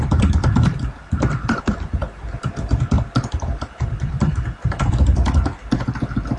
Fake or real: fake